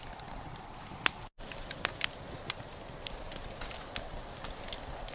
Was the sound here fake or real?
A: real